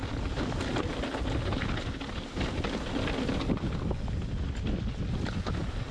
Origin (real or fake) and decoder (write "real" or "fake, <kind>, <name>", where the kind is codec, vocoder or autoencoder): real